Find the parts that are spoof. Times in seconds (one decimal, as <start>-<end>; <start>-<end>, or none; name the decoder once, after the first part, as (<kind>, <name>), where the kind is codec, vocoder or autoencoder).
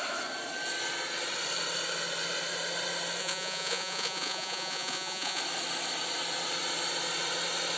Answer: 3.2-5.4 (vocoder, Vocos)